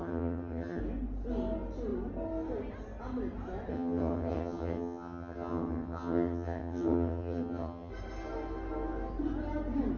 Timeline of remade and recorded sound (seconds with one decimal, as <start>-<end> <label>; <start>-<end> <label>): 0.0-0.8 remade; 0.8-3.7 recorded; 3.7-7.9 remade; 7.9-10.0 recorded